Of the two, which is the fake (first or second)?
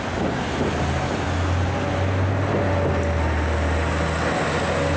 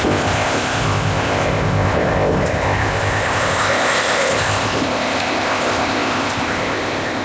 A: second